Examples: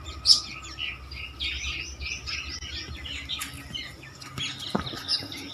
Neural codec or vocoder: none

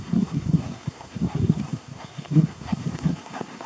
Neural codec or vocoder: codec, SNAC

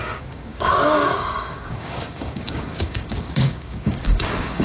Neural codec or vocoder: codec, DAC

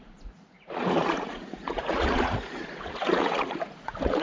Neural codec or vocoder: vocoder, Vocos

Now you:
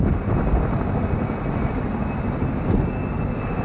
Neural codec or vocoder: none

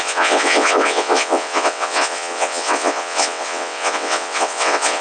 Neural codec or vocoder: vocoder, WaveNeXt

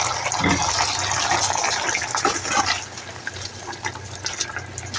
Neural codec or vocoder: none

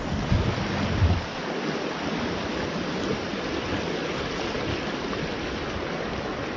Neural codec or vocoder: none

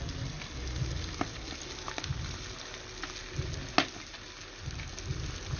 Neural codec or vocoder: none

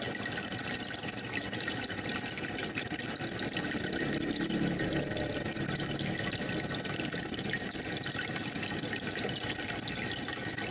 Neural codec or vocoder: none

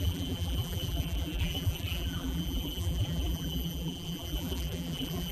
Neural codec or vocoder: vocoder, BigVGAN v2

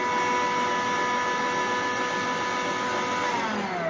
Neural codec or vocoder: none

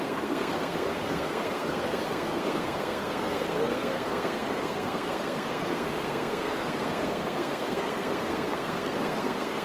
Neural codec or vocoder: codec, SNAC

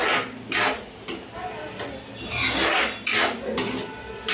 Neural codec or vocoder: none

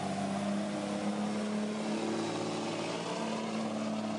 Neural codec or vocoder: none